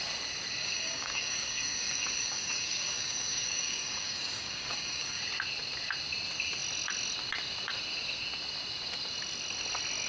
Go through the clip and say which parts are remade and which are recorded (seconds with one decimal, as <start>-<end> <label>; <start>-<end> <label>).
0.0-0.6 recorded; 0.6-5.2 remade; 5.2-10.1 recorded